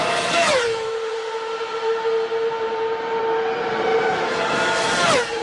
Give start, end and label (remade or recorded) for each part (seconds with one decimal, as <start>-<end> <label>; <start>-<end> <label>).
0.0-3.2 remade; 3.2-3.9 recorded; 3.9-5.4 remade